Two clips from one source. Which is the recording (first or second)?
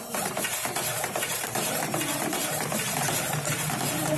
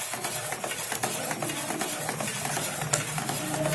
second